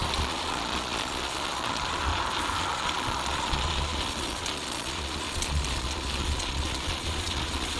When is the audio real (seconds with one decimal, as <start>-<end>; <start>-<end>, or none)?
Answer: 2.1-2.6